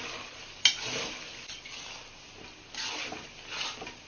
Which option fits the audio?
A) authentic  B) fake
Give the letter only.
A